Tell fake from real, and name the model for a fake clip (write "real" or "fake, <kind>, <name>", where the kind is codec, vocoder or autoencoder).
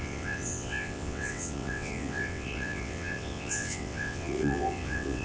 fake, vocoder, WaveNeXt